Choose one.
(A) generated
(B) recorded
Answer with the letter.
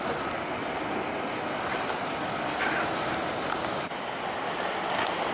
B